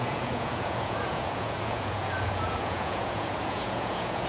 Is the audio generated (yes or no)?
yes